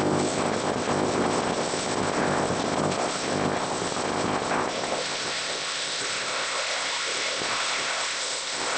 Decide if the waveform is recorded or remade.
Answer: remade